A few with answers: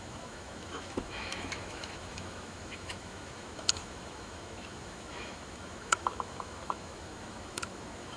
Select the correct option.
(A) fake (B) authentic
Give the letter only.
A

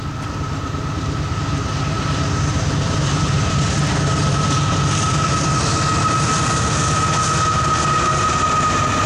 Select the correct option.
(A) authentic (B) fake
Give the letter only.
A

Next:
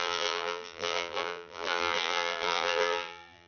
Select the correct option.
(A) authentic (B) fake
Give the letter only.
B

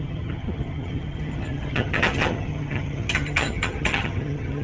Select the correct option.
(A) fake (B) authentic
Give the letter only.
A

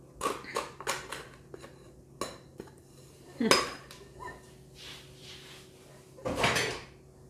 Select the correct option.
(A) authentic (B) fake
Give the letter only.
A